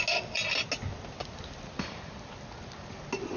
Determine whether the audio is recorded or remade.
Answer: recorded